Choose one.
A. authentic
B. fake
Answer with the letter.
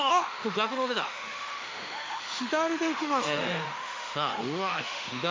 B